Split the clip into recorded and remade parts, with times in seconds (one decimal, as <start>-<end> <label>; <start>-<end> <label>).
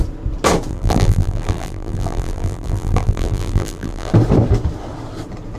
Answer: 0.0-0.7 recorded; 0.7-4.1 remade; 4.1-5.6 recorded